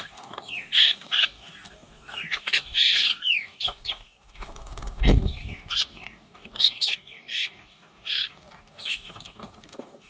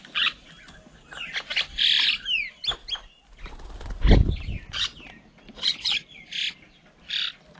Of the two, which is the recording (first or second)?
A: second